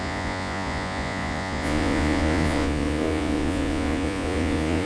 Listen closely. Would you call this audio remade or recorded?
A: remade